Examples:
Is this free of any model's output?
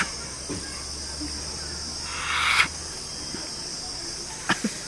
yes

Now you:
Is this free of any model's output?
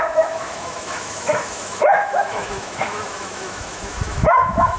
no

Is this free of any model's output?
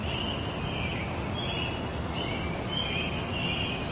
yes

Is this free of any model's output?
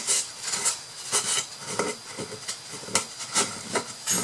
yes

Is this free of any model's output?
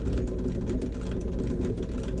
yes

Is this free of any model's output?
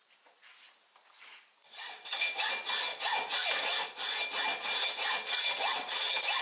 yes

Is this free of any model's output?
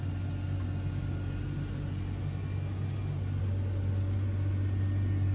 yes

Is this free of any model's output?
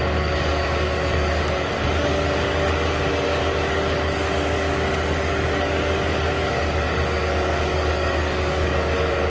no